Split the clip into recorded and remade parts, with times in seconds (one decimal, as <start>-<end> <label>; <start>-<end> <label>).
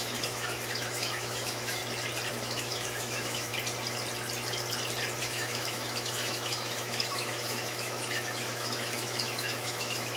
0.0-1.8 remade; 1.8-2.3 recorded; 2.3-3.5 remade; 3.5-5.2 recorded; 5.2-10.2 remade